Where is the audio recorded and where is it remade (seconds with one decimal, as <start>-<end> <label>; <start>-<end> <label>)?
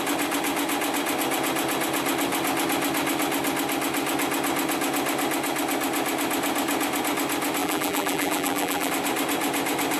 0.0-7.6 recorded; 7.6-8.9 remade; 8.9-10.0 recorded